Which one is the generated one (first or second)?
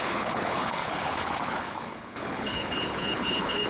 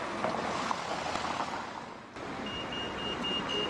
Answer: first